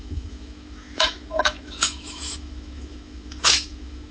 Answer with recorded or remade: remade